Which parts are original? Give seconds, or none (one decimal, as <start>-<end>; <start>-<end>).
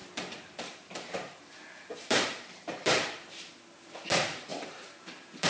3.3-4.5